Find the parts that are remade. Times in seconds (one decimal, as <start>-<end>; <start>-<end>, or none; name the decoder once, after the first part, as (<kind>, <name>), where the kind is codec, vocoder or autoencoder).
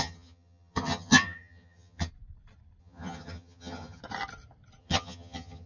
0.0-2.1 (vocoder, HiFi-GAN); 2.8-4.0; 4.8-5.7